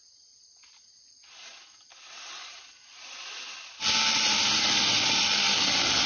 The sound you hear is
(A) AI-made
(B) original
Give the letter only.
B